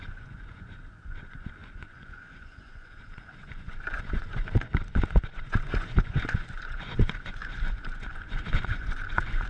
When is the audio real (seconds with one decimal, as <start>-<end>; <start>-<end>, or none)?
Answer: none